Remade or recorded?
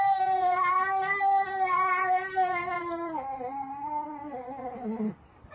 recorded